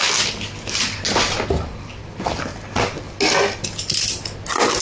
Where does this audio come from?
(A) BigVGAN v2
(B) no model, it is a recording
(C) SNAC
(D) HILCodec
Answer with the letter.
B